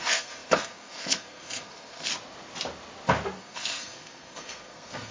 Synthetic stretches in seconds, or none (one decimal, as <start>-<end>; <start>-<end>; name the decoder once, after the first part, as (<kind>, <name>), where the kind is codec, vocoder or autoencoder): 0.0-2.1 (codec, SNAC); 3.4-5.1